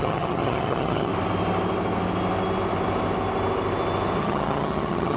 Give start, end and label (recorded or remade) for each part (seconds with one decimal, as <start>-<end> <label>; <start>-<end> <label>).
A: 0.0-1.1 remade; 1.1-4.2 recorded; 4.2-5.2 remade